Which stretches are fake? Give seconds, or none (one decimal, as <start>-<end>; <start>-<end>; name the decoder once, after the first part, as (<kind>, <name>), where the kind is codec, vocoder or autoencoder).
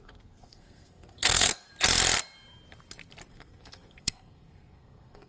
0.0-1.7 (codec, SNAC); 3.3-5.3